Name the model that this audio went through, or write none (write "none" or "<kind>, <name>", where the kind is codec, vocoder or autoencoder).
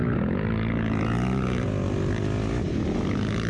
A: none